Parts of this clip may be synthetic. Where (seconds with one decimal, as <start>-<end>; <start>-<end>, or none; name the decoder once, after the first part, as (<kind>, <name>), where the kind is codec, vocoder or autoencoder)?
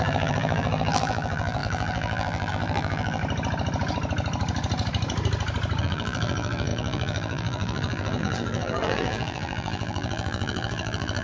0.0-3.2 (vocoder, BigVGAN v2); 5.8-11.2